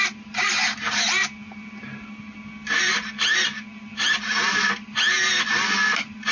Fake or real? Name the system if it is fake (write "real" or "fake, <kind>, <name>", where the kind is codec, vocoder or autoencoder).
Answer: real